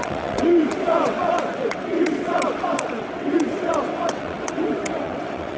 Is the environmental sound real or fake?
fake